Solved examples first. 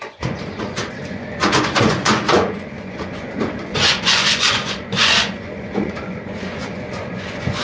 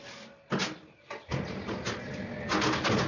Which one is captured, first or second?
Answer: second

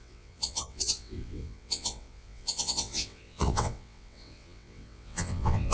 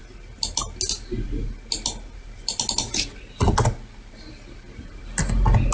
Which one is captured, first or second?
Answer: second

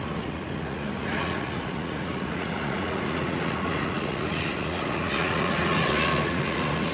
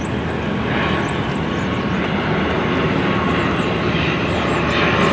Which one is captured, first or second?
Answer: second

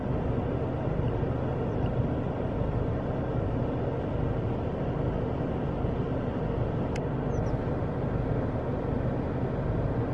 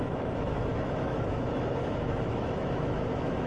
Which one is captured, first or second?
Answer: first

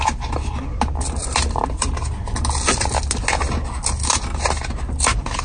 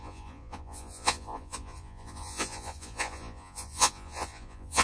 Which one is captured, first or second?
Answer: first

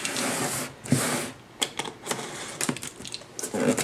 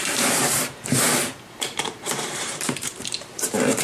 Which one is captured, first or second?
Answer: first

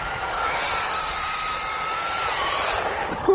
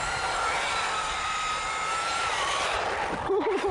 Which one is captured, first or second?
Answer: second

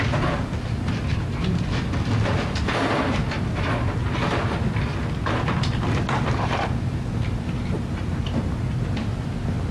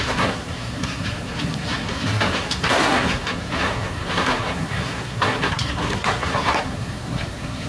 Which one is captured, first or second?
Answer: first